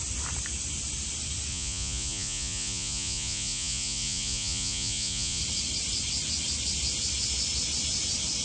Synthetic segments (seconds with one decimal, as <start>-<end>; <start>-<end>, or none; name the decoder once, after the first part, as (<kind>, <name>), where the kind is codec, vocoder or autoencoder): 1.5-5.4 (vocoder, Vocos)